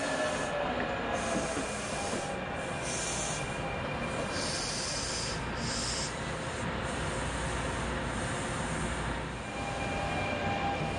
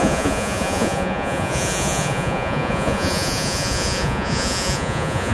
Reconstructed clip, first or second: second